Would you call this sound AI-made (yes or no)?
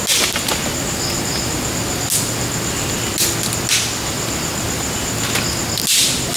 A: no